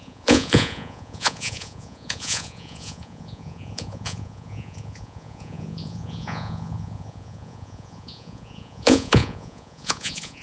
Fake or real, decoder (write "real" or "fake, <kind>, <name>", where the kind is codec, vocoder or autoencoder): fake, vocoder, Vocos